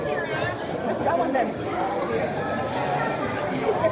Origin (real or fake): fake